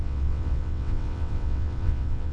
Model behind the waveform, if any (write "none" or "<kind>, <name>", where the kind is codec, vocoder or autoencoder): vocoder, WaveNeXt